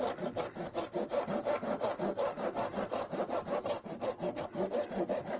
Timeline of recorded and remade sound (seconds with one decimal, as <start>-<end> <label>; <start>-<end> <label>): 0.0-5.4 recorded